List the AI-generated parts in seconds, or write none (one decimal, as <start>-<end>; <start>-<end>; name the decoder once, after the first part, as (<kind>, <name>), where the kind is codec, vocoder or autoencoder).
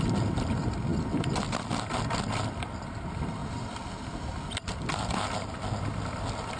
none